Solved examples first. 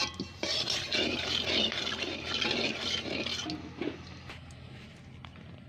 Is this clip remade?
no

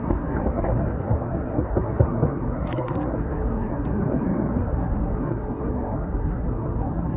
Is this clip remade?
yes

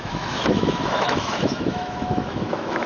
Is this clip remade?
yes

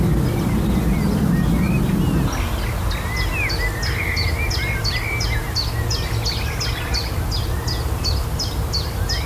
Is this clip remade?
no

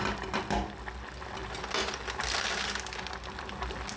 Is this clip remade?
no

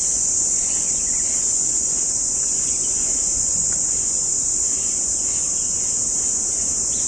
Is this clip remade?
yes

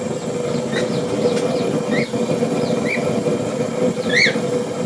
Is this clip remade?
no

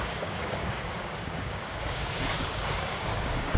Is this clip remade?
yes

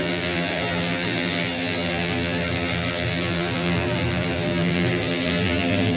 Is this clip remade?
yes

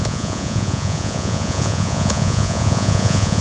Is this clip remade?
yes